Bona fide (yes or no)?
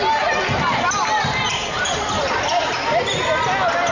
yes